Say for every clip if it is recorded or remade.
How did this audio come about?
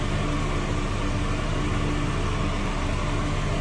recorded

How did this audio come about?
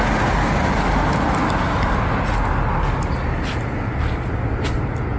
recorded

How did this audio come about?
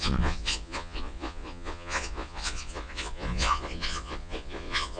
remade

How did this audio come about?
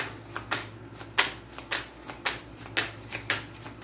recorded